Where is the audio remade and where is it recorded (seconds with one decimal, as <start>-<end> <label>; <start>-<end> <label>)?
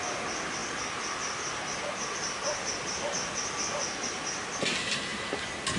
0.0-5.8 recorded